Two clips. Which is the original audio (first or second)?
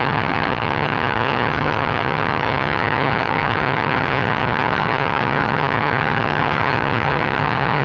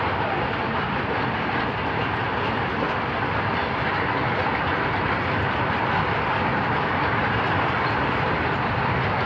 second